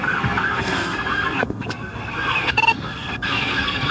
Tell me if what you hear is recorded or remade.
remade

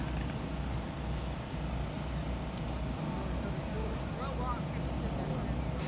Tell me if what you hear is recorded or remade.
recorded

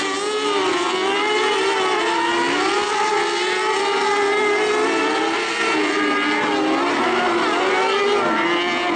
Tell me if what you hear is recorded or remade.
recorded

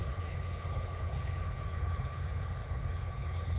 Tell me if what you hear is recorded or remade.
remade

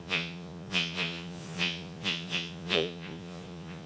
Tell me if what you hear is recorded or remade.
remade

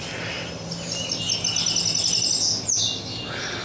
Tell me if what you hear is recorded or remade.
recorded